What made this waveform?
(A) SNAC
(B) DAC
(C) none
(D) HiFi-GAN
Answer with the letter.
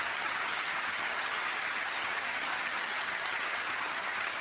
D